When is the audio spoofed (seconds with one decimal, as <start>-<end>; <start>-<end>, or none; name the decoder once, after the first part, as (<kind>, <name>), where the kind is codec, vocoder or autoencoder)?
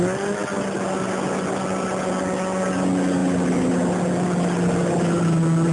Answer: none